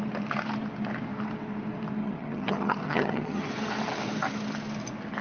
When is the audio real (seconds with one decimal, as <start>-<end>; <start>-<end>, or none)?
0.0-2.0; 3.5-5.2